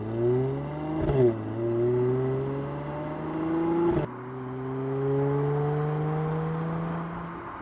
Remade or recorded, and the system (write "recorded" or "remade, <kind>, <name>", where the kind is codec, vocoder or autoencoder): recorded